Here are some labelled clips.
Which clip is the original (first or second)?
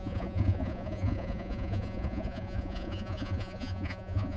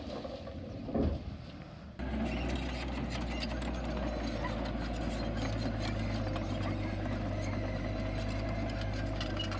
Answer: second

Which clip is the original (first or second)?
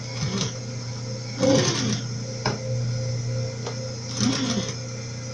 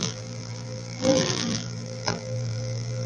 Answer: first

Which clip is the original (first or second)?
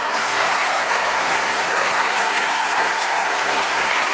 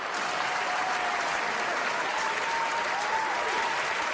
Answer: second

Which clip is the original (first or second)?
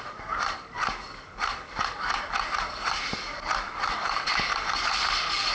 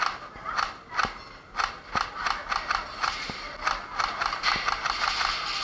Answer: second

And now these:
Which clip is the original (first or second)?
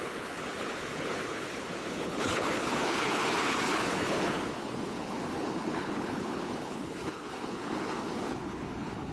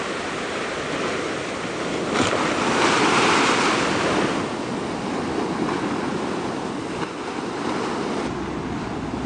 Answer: second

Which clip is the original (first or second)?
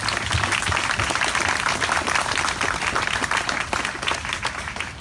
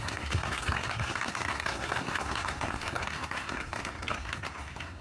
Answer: first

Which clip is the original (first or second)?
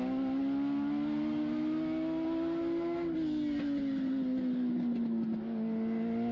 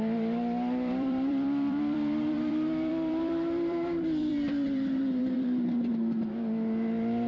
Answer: first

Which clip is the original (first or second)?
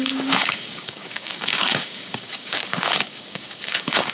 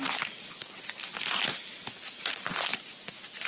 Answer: second